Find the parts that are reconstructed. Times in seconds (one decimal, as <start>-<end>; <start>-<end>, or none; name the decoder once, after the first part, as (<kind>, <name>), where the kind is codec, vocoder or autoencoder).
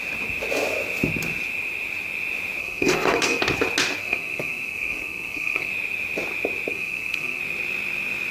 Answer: 2.6-3.4 (codec, SNAC); 4.0-5.7; 6.7-7.4